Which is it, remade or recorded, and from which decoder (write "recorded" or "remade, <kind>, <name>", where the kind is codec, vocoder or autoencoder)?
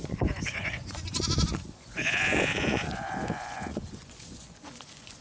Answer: remade, vocoder, Vocos